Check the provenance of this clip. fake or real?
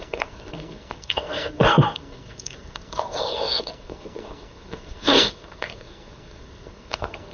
fake